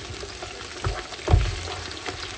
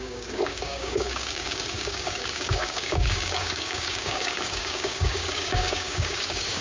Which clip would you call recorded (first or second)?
first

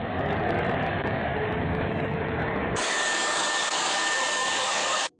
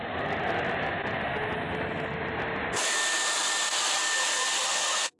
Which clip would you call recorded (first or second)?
second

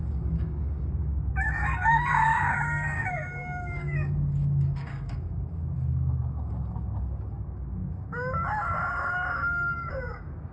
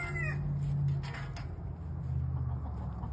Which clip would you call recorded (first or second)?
second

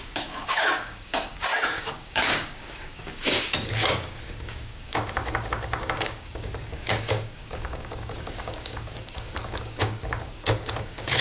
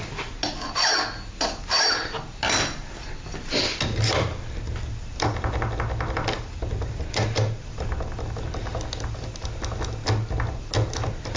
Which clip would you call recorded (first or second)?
second